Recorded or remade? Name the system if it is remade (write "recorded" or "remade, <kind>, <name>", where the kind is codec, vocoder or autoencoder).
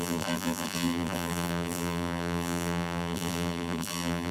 remade, vocoder, BigVGAN v2